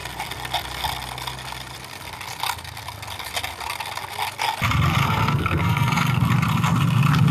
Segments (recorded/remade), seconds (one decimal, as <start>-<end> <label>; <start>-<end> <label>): 0.0-5.0 recorded; 5.0-6.2 remade; 6.2-7.3 recorded